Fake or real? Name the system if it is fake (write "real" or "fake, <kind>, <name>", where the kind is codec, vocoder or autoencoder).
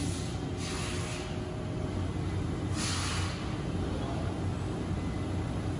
real